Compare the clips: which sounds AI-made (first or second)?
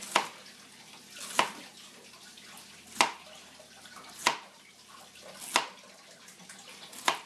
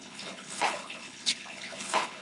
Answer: second